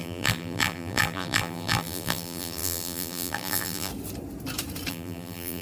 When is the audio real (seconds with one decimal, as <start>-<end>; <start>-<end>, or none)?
3.9-4.9